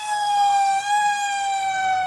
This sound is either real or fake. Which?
fake